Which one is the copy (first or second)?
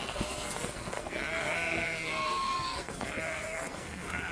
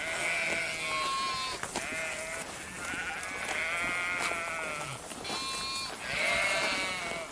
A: first